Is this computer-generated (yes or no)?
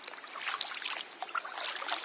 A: no